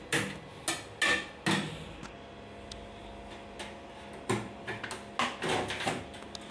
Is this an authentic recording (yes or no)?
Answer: yes